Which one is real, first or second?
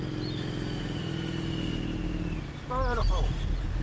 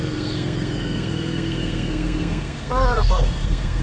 first